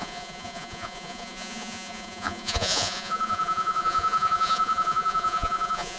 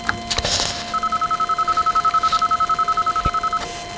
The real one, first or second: second